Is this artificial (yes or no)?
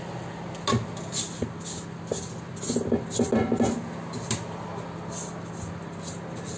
no